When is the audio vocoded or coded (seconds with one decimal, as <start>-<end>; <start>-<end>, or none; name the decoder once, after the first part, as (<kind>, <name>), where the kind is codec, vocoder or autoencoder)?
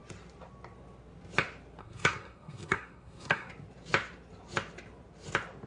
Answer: 1.8-3.5 (codec, SNAC)